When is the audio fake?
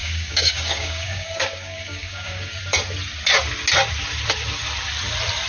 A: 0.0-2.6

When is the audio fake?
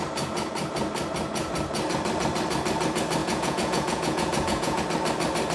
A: 3.2-4.8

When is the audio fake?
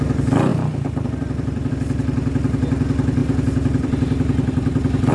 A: 0.5-1.7; 3.2-5.1